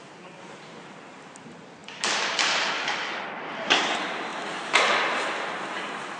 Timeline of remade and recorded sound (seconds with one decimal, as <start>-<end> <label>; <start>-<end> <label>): 0.0-1.8 recorded; 1.8-3.8 remade; 3.8-6.2 recorded